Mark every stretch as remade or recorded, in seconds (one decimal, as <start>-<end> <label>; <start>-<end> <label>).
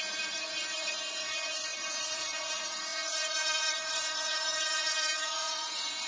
0.0-6.1 remade